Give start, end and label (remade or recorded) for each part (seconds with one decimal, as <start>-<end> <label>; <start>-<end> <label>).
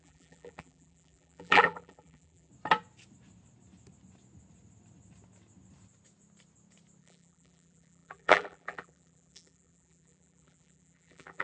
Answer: 0.0-2.5 remade; 2.5-7.0 recorded; 7.0-11.4 remade